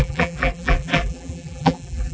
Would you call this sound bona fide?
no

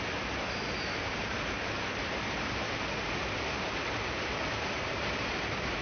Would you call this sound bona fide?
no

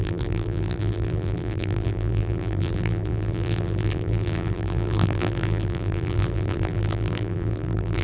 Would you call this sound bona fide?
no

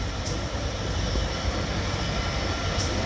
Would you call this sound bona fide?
yes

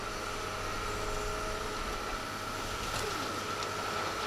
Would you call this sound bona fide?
yes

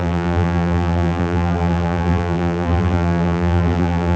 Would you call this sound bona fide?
no